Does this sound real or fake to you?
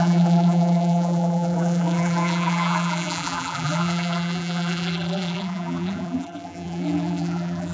fake